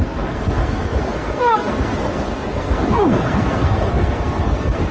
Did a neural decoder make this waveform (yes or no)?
yes